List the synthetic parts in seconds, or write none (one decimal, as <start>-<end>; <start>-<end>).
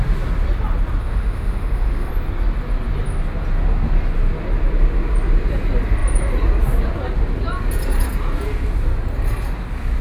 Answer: 1.0-2.1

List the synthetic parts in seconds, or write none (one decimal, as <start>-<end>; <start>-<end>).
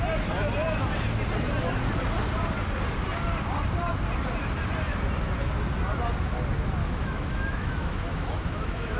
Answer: 6.8-9.0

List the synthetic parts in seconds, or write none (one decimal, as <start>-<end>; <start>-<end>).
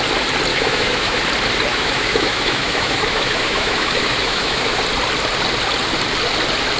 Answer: 0.5-1.2; 1.7-4.8